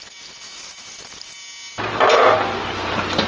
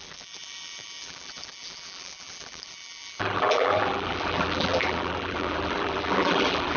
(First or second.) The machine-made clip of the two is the second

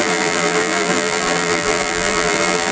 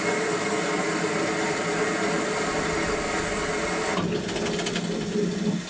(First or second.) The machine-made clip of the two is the first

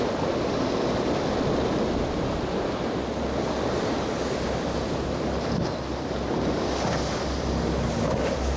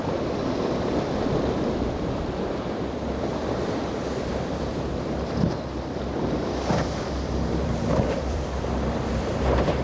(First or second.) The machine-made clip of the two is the second